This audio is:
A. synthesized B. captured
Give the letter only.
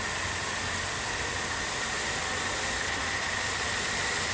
B